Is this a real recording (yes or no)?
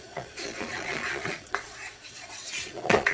no